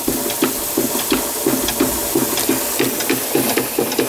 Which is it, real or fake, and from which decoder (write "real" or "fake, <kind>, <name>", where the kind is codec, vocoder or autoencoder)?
real